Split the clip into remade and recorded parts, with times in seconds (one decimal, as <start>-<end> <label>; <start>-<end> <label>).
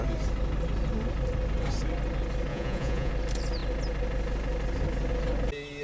0.0-2.5 recorded; 2.5-3.1 remade; 3.1-5.8 recorded